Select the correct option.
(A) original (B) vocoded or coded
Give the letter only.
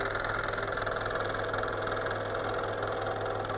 A